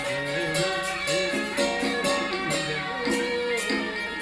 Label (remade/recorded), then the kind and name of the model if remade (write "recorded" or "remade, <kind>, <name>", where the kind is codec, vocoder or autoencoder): recorded